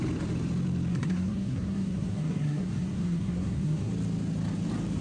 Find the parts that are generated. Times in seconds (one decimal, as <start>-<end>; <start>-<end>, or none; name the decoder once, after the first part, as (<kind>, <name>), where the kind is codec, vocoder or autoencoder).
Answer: 0.9-3.9 (codec, SNAC)